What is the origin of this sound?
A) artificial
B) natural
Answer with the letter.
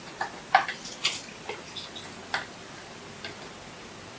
B